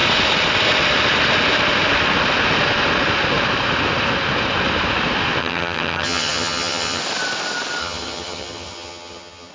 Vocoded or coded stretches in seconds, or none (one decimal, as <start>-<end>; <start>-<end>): 5.4-7.0; 7.8-9.5